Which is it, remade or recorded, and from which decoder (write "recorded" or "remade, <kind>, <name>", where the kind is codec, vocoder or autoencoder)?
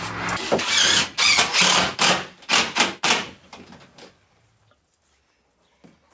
recorded